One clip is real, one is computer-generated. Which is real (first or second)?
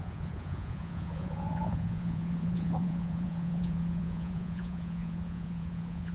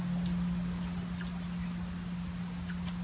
second